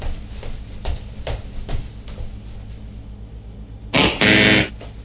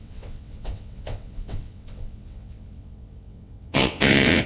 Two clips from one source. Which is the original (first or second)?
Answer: first